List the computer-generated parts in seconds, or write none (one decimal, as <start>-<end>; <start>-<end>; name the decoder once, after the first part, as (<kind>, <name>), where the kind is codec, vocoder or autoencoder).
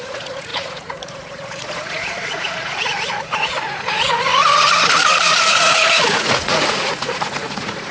0.0-4.3 (vocoder, Vocos); 5.5-7.9